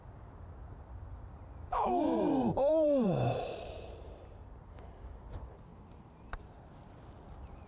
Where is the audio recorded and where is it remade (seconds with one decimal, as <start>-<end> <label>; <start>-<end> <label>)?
0.0-1.7 recorded; 1.7-4.3 remade; 4.3-5.7 recorded; 5.7-6.4 remade; 6.4-7.7 recorded

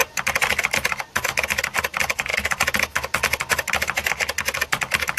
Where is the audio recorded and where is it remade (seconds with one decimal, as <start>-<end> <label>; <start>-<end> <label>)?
0.0-5.2 recorded

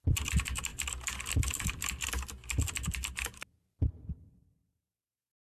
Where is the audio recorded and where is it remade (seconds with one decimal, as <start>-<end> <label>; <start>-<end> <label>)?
0.0-0.7 remade; 0.7-4.0 recorded; 4.0-5.5 remade

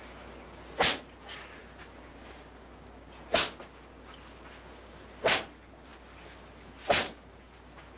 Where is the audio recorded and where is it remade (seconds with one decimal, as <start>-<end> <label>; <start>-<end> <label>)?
0.0-8.0 recorded

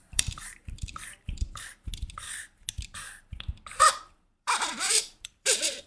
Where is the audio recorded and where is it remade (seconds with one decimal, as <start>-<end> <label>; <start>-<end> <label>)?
0.0-1.9 remade; 1.9-4.1 recorded; 4.1-5.9 remade

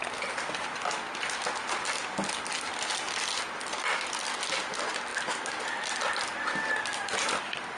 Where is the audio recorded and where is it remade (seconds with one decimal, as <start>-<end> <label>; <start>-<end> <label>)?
0.0-7.8 recorded

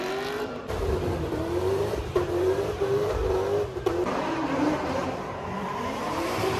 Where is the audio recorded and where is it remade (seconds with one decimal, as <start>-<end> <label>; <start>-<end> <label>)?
0.0-3.2 remade; 3.2-4.0 recorded; 4.0-6.6 remade

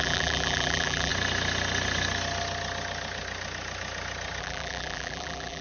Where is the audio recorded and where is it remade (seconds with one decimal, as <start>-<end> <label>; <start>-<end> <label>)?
0.0-1.1 remade; 1.1-4.4 recorded; 4.4-5.6 remade